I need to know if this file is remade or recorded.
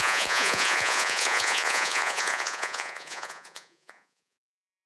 remade